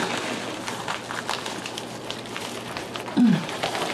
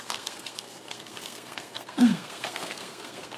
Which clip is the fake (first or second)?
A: second